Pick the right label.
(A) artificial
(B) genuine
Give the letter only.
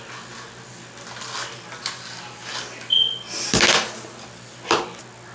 B